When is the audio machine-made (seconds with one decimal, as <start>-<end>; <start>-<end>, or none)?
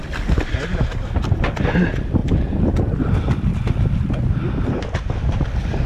none